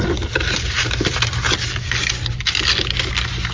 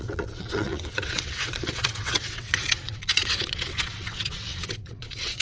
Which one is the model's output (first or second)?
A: second